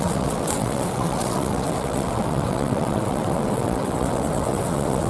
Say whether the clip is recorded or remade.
remade